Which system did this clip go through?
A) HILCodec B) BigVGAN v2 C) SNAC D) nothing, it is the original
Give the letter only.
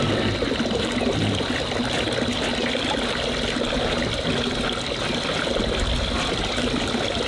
D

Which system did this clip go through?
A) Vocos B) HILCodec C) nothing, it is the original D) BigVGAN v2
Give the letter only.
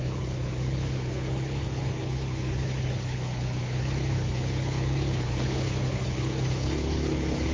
B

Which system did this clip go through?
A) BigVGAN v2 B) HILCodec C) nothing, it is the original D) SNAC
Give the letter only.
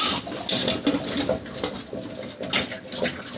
C